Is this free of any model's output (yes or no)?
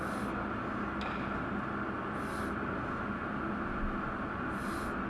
yes